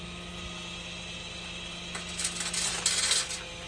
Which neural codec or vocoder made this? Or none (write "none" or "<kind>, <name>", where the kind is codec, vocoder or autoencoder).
none